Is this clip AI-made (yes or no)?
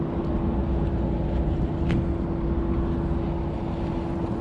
no